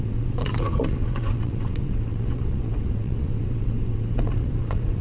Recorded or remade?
remade